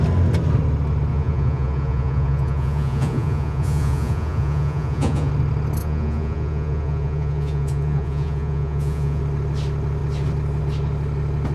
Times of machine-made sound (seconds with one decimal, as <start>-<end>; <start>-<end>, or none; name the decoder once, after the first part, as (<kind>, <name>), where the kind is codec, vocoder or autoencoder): 1.1-5.3 (vocoder, Vocos); 5.8-9.2